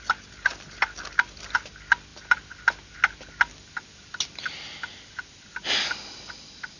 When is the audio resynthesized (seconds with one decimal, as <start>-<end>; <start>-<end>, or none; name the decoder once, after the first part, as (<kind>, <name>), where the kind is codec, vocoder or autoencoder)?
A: none